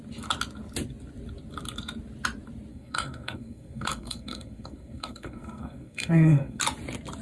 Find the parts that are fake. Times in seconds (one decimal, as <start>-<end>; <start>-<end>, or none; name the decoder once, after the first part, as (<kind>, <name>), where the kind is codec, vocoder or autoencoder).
2.7-6.6 (codec, SNAC)